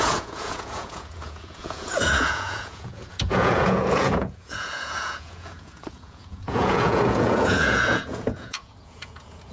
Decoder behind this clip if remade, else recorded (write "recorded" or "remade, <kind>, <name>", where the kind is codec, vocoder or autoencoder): remade, vocoder, Vocos